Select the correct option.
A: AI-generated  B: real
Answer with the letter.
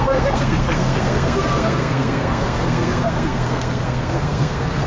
A